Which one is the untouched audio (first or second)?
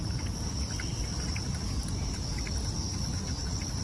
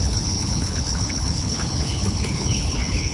first